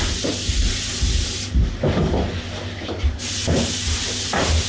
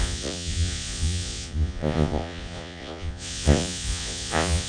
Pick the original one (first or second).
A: first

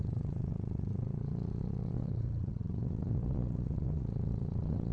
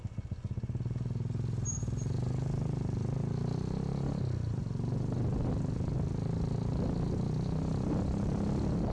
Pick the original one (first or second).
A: second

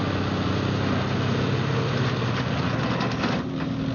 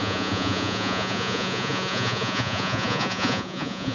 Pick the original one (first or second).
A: first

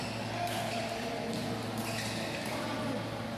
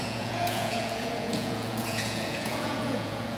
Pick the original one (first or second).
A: first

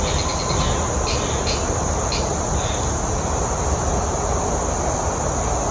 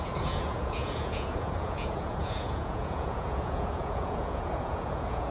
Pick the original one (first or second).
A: first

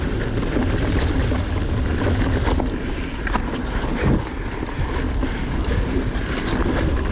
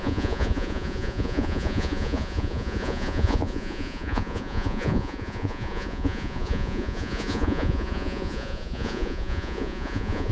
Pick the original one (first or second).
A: first